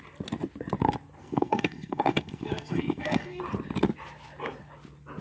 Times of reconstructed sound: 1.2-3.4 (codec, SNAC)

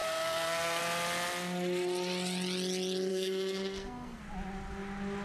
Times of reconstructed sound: 0.0-0.8 (codec, SNAC); 3.1-4.2

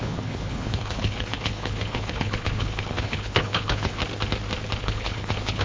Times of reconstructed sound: 0.0-4.0 (codec, HILCodec); 4.8-5.6

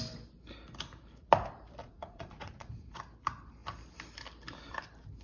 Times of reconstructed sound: 1.8-3.0 (vocoder, Vocos)